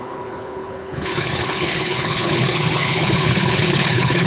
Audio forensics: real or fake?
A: fake